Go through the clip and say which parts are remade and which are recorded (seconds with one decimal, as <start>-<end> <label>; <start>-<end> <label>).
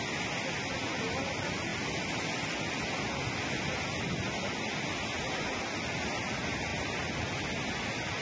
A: 0.0-1.7 recorded; 1.7-2.6 remade; 2.6-8.2 recorded